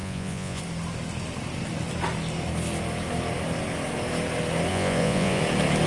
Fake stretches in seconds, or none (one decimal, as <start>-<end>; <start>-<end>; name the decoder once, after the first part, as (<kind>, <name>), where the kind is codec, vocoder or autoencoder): 0.0-0.6 (vocoder, Vocos); 4.7-5.4